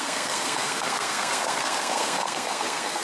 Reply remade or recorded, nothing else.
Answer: remade